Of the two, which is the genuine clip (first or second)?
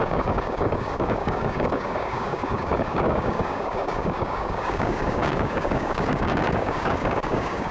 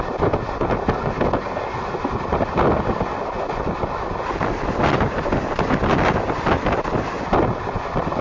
second